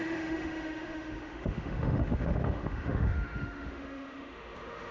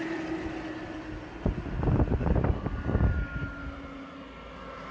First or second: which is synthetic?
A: first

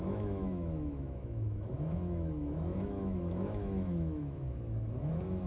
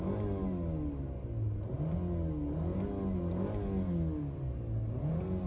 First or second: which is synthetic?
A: first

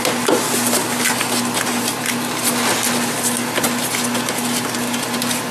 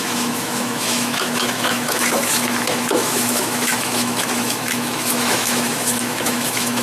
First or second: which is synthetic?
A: second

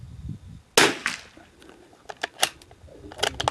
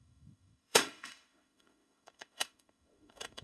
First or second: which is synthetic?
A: second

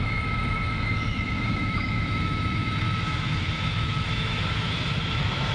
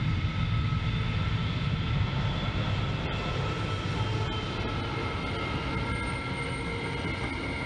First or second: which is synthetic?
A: first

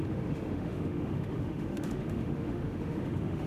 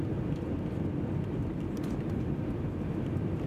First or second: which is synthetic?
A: first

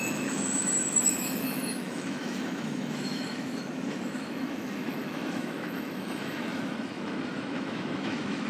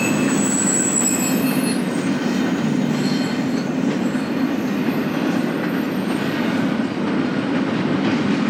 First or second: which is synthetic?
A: first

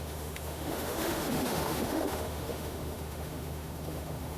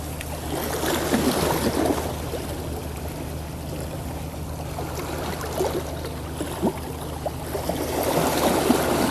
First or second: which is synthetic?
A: first